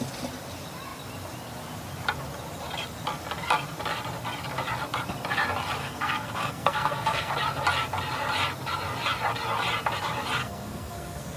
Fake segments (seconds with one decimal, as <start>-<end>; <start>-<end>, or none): 5.8-7.3; 10.4-11.4